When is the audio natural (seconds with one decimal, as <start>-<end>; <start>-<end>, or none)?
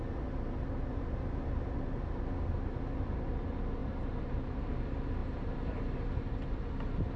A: 0.0-0.9; 2.2-3.8; 4.7-5.2; 6.2-7.2